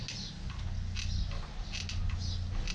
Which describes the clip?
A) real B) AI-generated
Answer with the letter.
A